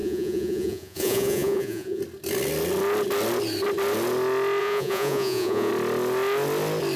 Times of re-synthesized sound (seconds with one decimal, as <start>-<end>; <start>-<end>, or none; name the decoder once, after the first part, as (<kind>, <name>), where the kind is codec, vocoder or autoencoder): 0.0-2.0 (vocoder, Vocos); 4.6-5.7